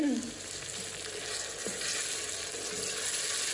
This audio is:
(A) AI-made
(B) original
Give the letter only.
B